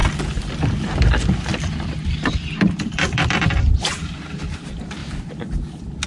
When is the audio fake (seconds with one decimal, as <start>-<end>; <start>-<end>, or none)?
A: 1.5-4.1; 5.0-5.6